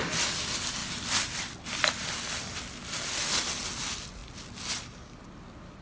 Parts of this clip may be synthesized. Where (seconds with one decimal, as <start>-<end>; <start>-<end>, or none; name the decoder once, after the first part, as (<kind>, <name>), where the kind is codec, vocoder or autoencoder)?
0.8-2.1 (vocoder, BigVGAN v2)